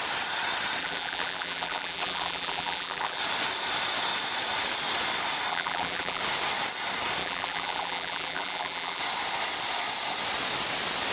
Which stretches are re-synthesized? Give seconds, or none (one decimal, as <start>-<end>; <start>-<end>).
0.8-3.2; 5.5-6.2; 7.2-9.0